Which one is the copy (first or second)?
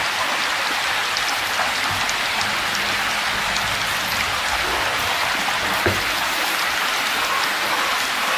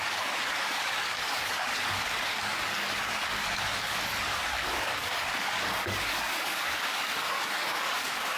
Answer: second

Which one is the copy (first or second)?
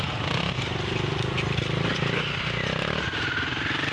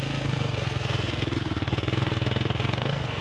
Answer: second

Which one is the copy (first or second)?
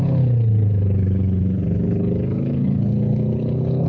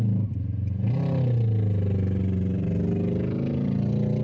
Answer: first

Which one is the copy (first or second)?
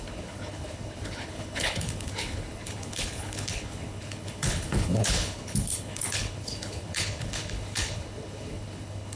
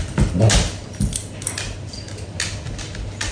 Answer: first